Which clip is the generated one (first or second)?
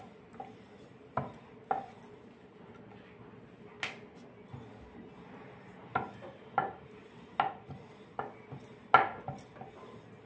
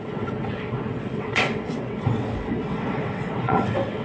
second